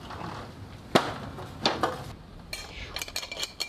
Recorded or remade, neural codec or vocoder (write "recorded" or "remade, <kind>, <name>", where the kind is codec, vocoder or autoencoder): recorded